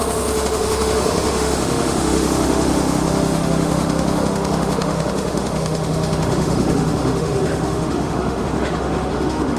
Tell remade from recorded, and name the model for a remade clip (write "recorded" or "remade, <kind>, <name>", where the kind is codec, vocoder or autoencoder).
remade, autoencoder, DAC-VAE